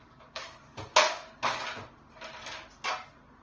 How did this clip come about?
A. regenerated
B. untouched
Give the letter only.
B